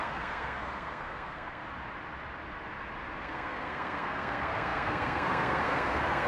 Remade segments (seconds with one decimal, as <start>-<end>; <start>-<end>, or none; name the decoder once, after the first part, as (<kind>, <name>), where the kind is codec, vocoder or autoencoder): 0.0-1.6 (codec, SNAC); 3.2-6.3

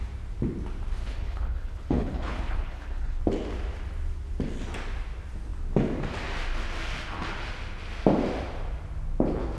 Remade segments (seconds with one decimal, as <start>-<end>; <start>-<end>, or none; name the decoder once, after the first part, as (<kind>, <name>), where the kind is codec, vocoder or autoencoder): 1.0-3.2 (codec, HILCodec)

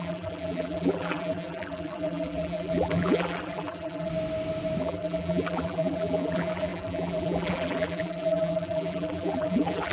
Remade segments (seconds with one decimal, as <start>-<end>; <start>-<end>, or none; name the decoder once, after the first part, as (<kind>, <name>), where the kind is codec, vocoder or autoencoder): 0.0-4.1 (vocoder, BigVGAN v2); 4.8-9.9

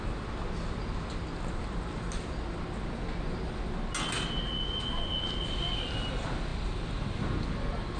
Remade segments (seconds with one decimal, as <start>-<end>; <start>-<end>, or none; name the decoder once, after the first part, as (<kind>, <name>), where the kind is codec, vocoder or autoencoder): none

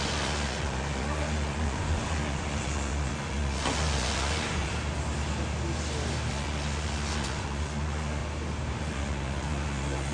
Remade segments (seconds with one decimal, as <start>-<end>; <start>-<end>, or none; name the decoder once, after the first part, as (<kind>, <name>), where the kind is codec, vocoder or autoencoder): 0.0-4.7 (vocoder, Vocos); 6.3-8.2; 8.8-10.1